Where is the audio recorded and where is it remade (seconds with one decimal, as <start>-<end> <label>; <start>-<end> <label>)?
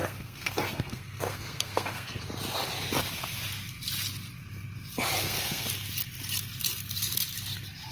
0.0-2.2 remade; 2.2-5.2 recorded; 5.2-5.7 remade; 5.7-7.9 recorded